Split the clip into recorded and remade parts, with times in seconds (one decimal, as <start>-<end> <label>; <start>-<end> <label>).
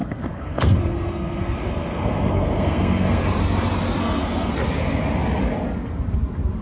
0.0-3.2 remade; 3.2-4.0 recorded; 4.0-4.5 remade; 4.5-6.6 recorded